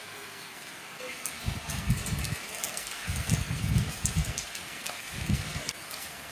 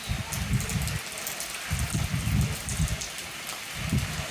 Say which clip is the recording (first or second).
second